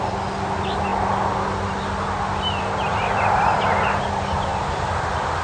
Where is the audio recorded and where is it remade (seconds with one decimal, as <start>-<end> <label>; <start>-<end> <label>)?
0.0-5.4 recorded